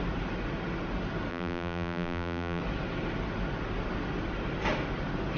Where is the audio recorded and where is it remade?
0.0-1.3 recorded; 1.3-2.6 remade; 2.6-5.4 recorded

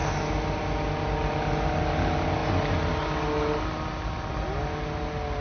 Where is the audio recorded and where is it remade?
0.0-5.4 recorded